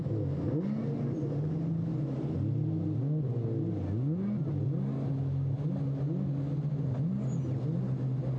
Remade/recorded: recorded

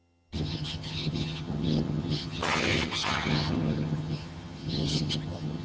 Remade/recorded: remade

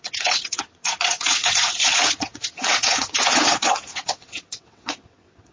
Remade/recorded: remade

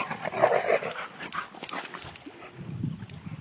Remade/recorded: recorded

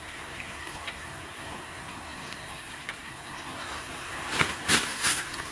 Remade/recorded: remade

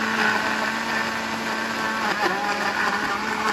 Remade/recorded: recorded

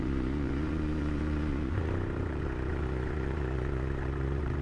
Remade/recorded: remade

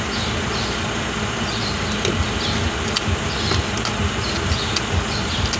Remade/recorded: recorded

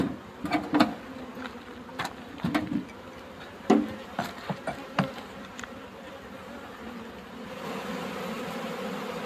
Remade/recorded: recorded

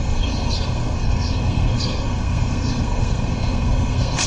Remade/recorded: remade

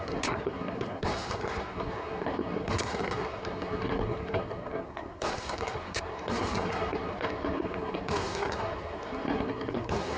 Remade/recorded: remade